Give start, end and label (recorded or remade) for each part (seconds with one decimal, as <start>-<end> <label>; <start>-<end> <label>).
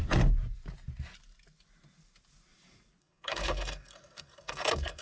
0.0-3.0 recorded; 3.0-5.0 remade